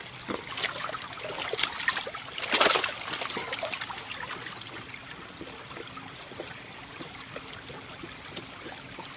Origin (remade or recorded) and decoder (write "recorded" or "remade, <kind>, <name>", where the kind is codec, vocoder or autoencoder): recorded